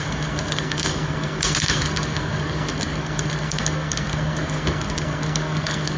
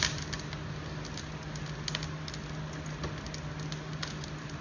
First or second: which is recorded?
second